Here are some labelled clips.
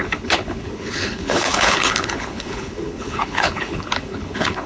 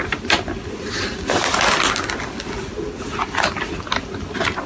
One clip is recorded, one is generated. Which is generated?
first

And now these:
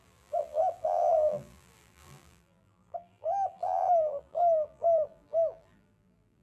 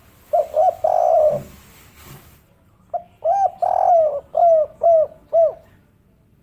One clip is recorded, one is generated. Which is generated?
first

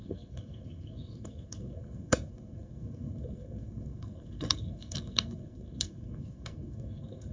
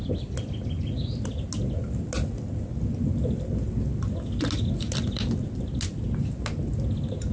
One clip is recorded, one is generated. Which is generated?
first